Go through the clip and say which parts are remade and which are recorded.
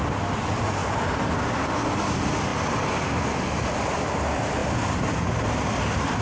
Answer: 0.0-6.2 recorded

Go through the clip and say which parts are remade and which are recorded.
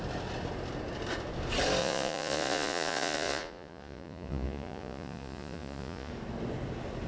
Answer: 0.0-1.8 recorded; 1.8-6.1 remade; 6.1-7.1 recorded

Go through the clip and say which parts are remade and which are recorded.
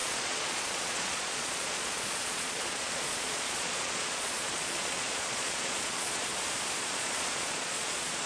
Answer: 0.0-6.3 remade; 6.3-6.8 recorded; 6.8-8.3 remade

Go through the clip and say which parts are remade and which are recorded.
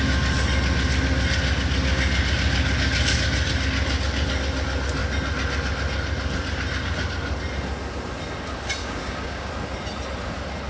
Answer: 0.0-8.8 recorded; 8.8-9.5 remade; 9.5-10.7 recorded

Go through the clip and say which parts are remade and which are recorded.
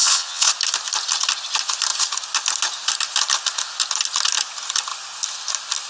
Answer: 0.0-0.5 remade; 0.5-5.9 recorded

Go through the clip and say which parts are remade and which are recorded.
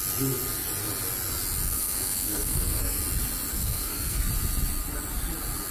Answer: 0.0-1.7 recorded; 1.7-3.0 remade; 3.0-3.5 recorded; 3.5-4.3 remade; 4.3-5.7 recorded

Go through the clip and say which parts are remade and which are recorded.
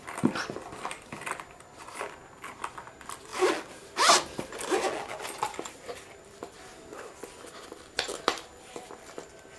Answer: 0.0-9.6 recorded